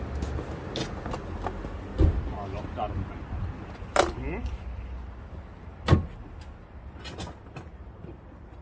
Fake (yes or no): no